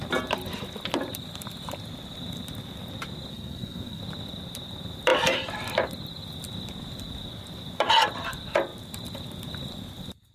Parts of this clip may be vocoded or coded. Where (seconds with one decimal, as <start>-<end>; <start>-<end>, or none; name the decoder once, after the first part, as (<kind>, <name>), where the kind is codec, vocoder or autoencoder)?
3.3-4.0 (codec, SNAC)